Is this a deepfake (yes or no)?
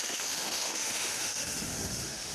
yes